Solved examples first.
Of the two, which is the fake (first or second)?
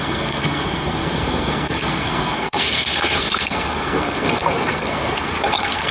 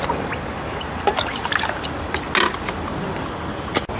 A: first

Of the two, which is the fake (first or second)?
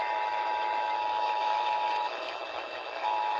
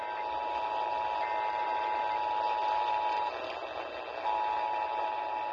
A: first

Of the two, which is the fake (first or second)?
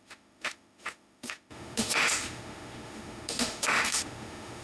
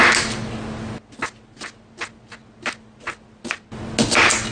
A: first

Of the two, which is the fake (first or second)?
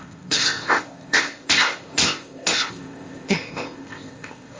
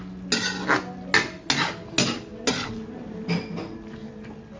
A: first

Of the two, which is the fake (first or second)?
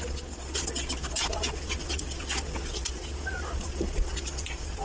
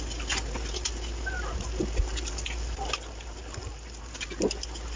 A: first